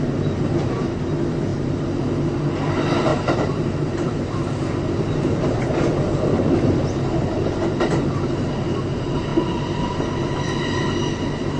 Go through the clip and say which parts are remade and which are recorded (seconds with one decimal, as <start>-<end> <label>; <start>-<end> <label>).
0.0-1.5 recorded; 1.5-2.1 remade; 2.1-3.1 recorded; 3.1-4.7 remade; 4.7-11.6 recorded